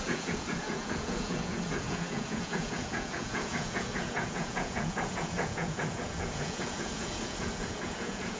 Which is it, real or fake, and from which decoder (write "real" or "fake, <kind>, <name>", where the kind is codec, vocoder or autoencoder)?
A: fake, vocoder, Vocos